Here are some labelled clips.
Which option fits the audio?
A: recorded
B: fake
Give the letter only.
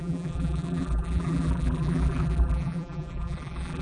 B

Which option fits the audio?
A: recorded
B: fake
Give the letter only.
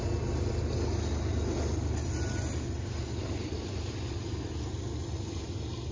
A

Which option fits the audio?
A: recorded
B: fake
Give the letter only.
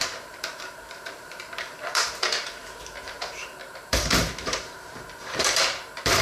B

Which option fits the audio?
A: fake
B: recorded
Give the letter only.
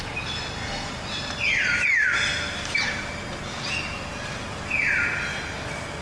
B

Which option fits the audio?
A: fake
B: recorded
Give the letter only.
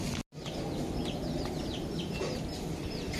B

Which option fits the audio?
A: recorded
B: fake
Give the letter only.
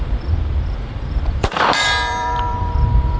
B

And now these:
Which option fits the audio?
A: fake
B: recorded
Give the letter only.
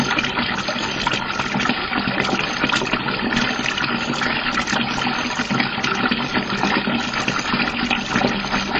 B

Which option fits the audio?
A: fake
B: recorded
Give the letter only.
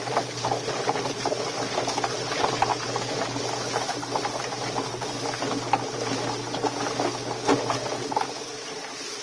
B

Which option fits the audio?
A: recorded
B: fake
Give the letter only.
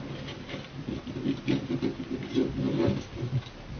A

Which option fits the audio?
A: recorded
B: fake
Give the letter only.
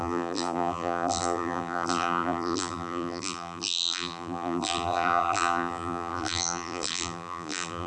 B